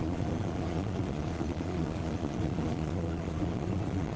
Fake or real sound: fake